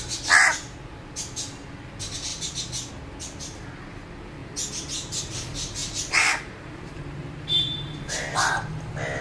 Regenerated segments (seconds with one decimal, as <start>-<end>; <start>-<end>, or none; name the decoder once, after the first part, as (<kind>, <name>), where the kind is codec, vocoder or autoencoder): 5.8-8.5 (vocoder, BigVGAN v2)